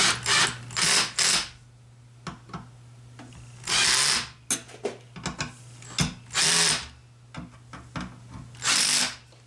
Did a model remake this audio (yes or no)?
no